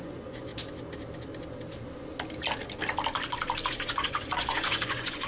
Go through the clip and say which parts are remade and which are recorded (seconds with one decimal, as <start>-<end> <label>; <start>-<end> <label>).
0.0-0.5 remade; 0.5-3.7 recorded; 3.7-5.3 remade